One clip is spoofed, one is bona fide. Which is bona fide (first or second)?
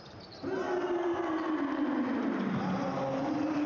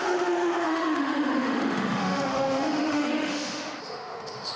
first